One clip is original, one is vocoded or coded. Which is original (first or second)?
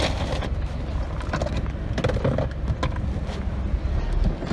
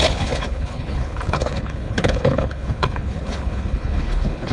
first